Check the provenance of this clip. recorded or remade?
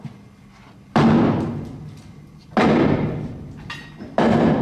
recorded